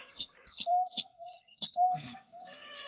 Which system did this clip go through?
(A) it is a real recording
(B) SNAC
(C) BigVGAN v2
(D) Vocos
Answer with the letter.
B